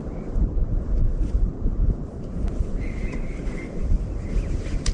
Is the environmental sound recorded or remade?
remade